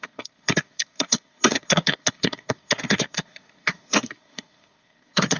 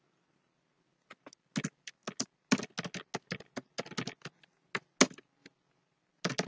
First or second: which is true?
second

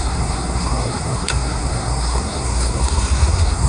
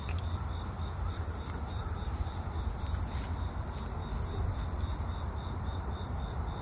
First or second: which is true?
second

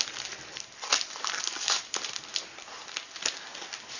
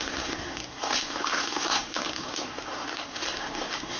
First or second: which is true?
first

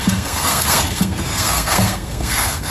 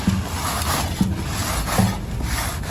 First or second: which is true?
second